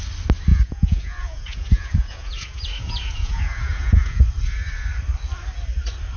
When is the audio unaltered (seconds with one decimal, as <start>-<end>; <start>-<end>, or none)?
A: 0.0-0.5; 4.2-6.2